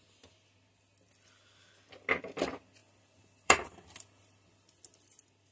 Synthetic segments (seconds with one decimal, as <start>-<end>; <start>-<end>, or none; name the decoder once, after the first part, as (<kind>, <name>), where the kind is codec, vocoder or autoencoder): 2.8-4.8 (vocoder, BigVGAN v2)